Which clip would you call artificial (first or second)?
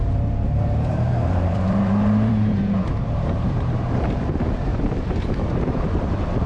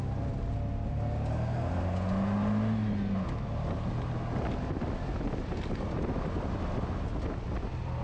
first